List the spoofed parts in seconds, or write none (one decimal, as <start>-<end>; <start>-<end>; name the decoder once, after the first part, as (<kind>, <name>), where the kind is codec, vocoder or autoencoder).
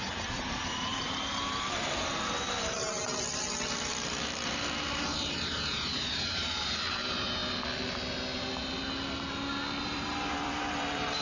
0.0-7.4 (vocoder, BigVGAN v2); 9.8-11.2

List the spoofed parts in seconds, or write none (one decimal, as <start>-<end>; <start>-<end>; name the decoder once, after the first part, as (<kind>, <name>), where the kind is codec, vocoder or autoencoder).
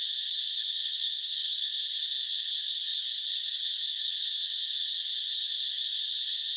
0.7-1.7 (codec, SNAC)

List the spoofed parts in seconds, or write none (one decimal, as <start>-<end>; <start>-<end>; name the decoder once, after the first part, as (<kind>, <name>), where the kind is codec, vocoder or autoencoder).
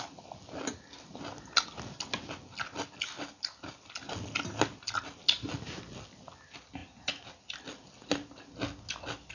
none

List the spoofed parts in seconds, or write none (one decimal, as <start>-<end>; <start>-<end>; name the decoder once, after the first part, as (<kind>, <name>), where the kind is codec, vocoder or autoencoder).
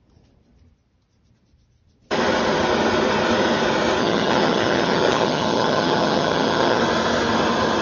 4.0-6.8 (vocoder, HiFi-GAN)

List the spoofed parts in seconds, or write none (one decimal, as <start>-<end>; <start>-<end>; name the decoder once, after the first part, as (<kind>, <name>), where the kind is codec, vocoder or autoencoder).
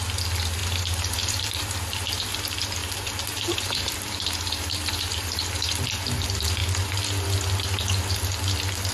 0.6-1.6 (vocoder, BigVGAN v2); 2.8-5.5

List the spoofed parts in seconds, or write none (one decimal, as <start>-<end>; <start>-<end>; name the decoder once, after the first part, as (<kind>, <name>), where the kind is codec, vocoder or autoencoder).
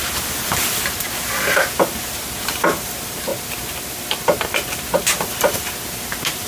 none